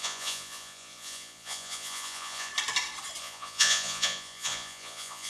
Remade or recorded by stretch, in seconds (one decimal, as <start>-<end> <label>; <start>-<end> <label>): 0.0-2.5 remade; 2.5-3.2 recorded; 3.2-5.3 remade